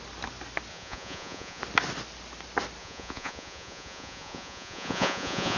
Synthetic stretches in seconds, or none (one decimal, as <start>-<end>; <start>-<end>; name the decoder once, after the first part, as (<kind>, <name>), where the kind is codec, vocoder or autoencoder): 0.7-1.6 (vocoder, Vocos); 2.8-5.6